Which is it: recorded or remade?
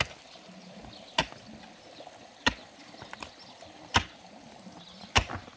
recorded